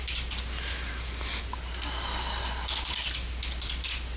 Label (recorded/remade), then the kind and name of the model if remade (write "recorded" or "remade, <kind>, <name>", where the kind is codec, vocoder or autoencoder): recorded